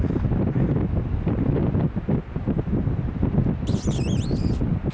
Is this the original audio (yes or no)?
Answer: yes